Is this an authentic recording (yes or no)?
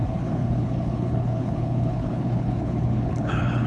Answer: no